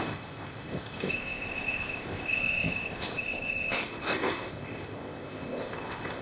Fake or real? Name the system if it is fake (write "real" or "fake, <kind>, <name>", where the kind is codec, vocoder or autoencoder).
fake, codec, ZipCodec